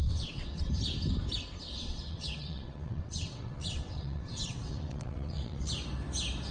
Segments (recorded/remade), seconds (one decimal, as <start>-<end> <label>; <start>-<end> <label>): 0.0-0.7 remade; 0.7-1.8 recorded; 1.8-5.7 remade; 5.7-6.5 recorded